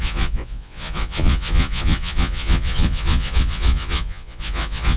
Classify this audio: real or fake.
fake